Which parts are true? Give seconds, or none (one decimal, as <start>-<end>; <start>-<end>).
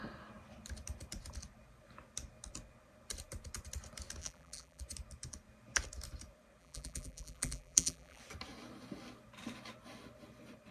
0.0-4.2; 4.8-6.6; 8.2-10.7